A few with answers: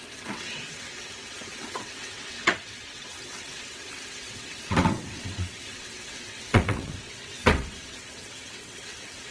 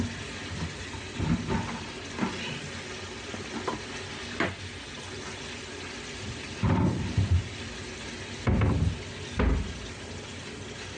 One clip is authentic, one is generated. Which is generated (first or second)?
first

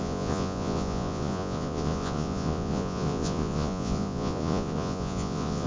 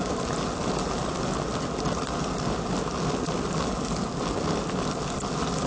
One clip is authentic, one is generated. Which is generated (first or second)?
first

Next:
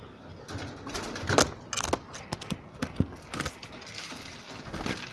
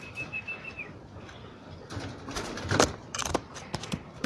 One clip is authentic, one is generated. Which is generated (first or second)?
second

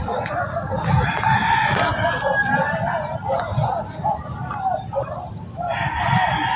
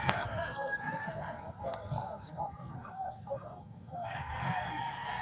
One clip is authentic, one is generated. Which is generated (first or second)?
second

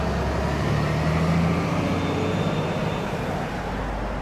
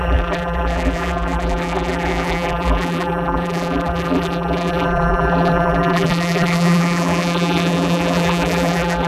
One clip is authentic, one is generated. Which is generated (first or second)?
second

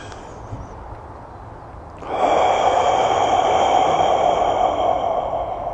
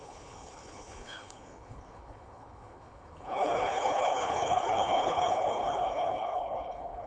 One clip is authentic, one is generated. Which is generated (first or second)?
second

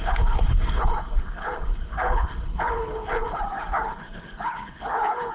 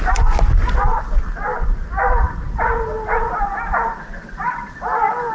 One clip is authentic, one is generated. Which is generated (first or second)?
first